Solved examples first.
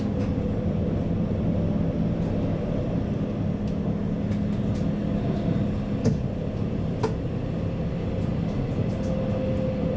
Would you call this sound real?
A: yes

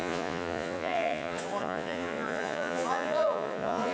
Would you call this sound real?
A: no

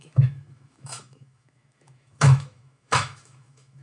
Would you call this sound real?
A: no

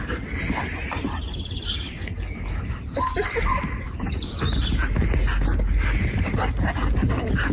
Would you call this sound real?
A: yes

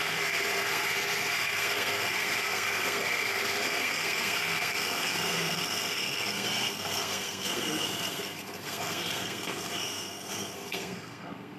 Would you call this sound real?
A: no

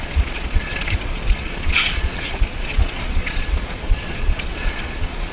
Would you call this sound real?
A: no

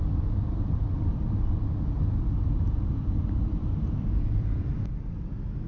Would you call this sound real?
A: no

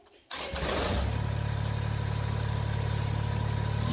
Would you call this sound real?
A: yes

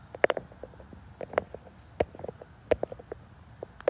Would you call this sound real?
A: yes